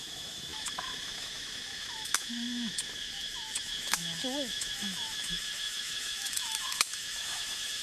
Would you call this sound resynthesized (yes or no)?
yes